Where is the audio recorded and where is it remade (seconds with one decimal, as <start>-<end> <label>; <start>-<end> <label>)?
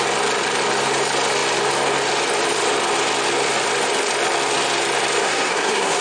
0.0-5.2 recorded; 5.2-6.0 remade